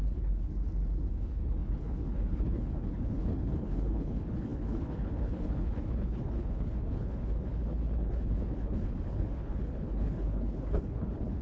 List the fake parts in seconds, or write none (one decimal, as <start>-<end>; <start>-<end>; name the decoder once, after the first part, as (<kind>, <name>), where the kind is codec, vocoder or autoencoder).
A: 0.0-0.5 (codec, HILCodec); 1.1-11.4